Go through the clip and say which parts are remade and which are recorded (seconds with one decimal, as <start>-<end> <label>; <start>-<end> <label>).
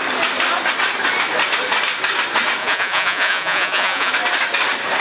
0.0-2.6 recorded; 2.6-4.1 remade; 4.1-5.0 recorded